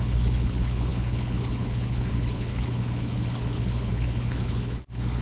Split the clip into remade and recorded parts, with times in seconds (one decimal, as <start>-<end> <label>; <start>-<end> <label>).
0.0-5.2 remade